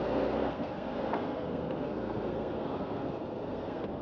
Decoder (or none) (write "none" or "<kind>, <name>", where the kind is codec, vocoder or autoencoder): codec, SNAC